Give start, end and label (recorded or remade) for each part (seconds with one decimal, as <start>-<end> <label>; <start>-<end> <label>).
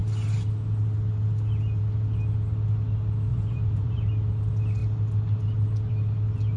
0.0-3.3 recorded; 3.3-4.1 remade; 4.1-6.6 recorded